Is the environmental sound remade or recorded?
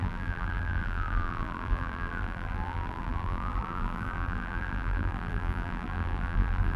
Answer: remade